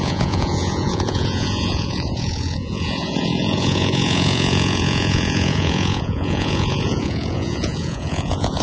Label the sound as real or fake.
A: fake